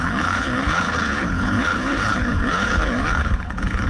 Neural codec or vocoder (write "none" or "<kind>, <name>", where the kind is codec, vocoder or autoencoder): codec, HILCodec